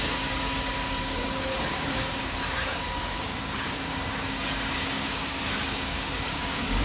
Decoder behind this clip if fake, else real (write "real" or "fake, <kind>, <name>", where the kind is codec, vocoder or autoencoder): fake, codec, DAC